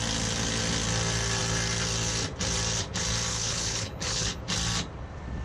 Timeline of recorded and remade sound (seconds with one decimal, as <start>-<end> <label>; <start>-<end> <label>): 0.0-3.3 recorded; 3.3-4.4 remade; 4.4-5.4 recorded

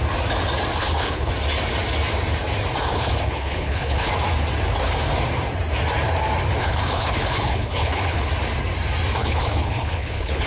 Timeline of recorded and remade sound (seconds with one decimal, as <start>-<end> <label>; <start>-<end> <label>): 0.0-0.8 recorded; 0.8-1.3 remade; 1.3-2.9 recorded; 2.9-4.1 remade; 4.1-6.6 recorded; 6.6-8.3 remade; 8.3-9.2 recorded; 9.2-10.5 remade

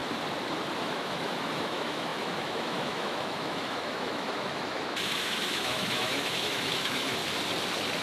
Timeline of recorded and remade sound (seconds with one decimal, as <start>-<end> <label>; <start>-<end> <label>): 0.0-0.8 recorded; 0.8-7.2 remade; 7.2-8.0 recorded

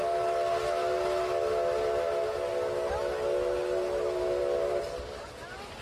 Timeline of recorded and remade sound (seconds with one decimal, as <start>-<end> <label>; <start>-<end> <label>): 0.0-5.8 recorded

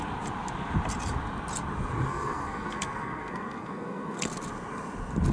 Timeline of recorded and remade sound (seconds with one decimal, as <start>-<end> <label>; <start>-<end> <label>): 0.0-2.1 recorded; 2.1-4.3 remade; 4.3-5.3 recorded

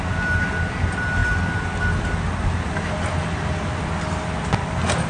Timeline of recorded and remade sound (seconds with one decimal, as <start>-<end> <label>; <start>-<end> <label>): 0.0-5.1 recorded

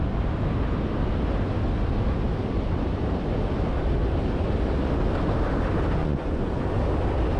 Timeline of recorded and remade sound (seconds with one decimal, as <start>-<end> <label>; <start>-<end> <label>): 0.0-6.0 recorded; 6.0-6.6 remade; 6.6-7.4 recorded